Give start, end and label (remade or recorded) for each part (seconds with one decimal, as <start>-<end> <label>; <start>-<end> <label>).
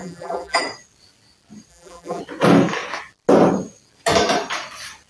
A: 0.0-0.6 remade; 0.6-1.7 recorded; 1.7-2.2 remade; 2.2-5.1 recorded